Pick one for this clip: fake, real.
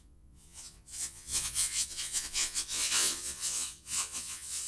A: fake